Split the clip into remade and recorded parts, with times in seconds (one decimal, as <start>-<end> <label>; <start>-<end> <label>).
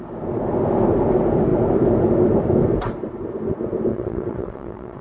0.0-3.9 recorded; 3.9-5.0 remade